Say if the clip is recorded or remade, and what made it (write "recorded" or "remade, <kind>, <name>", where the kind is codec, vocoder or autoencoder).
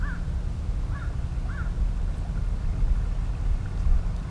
recorded